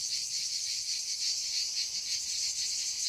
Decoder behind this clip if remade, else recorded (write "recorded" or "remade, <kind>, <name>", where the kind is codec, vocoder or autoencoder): recorded